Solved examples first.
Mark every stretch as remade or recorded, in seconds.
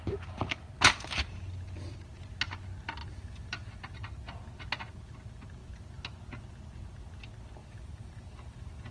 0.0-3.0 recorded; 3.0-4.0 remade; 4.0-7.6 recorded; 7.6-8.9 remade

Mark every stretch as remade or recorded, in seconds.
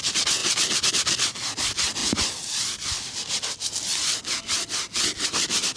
0.0-0.4 recorded; 0.4-0.9 remade; 0.9-2.0 recorded; 2.0-5.8 remade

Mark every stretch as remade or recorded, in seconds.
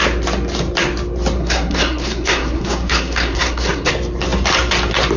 0.0-1.4 recorded; 1.4-3.9 remade; 3.9-5.2 recorded